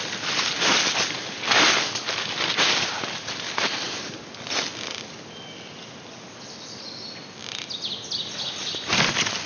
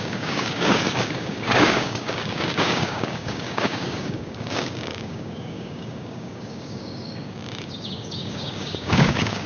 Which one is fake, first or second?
second